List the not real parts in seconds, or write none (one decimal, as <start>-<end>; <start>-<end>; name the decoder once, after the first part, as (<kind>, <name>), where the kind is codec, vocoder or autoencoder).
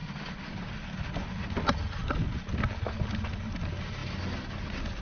2.0-2.5 (vocoder, BigVGAN v2)